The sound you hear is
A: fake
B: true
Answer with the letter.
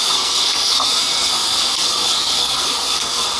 A